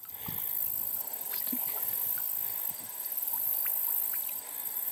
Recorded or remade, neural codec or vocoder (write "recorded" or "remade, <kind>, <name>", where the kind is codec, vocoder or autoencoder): recorded